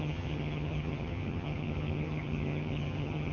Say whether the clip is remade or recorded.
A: remade